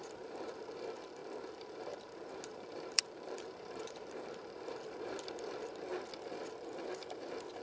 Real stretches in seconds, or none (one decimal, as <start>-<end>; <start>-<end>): 5.9-7.6